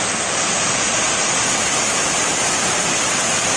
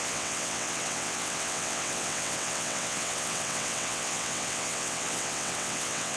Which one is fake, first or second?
second